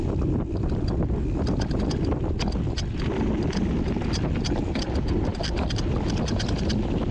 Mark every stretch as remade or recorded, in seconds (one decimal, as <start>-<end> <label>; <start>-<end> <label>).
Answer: 0.0-5.3 recorded; 5.3-5.8 remade; 5.8-7.1 recorded